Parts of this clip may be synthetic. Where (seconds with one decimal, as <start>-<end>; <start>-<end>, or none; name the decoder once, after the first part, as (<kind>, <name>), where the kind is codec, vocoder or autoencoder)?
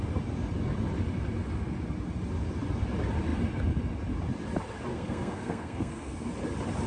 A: 4.9-6.3 (codec, SNAC)